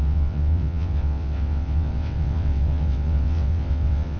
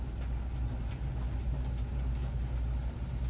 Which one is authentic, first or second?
second